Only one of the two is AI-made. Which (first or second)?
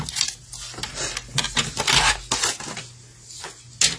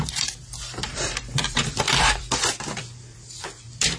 second